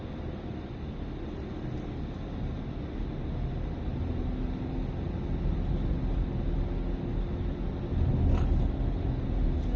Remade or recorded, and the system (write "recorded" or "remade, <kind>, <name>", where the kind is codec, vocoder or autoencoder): recorded